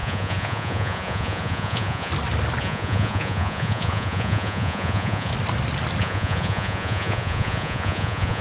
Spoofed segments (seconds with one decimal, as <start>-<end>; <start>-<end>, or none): 0.0-2.1; 2.6-5.3; 6.0-8.4